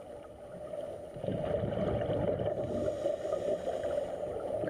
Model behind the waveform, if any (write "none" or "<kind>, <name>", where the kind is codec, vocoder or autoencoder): none